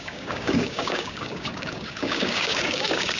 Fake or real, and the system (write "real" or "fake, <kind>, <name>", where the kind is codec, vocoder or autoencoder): fake, codec, DAC